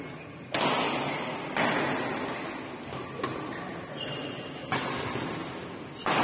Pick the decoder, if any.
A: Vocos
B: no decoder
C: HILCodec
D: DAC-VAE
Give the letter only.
B